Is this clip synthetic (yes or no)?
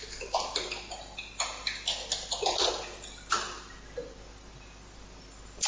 no